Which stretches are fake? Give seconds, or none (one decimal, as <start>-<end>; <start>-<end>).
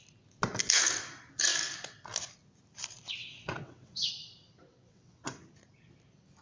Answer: 3.2-4.1; 4.7-5.4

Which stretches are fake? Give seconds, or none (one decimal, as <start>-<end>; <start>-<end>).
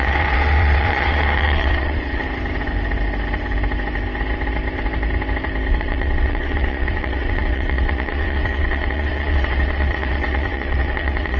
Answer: 0.0-2.2; 5.8-11.4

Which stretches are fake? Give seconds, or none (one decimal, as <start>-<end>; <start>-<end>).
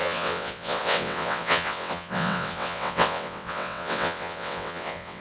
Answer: 0.0-5.2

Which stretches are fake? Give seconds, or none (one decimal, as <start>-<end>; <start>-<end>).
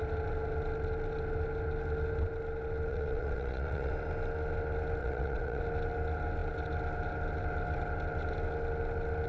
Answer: 2.9-3.9; 5.0-5.6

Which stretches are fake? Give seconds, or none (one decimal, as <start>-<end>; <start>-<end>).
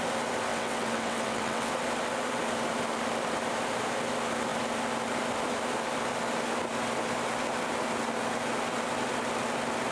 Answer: 0.5-1.7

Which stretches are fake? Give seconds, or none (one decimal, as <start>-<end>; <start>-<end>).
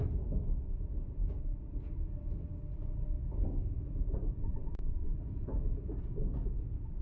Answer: 4.4-5.1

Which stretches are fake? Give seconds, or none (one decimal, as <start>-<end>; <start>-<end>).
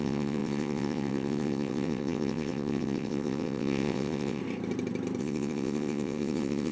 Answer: 0.0-4.4; 5.2-6.7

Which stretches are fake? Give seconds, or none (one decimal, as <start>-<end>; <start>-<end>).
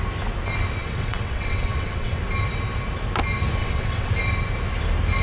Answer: 0.8-2.2; 3.6-4.1